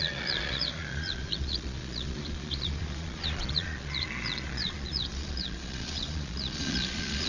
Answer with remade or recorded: remade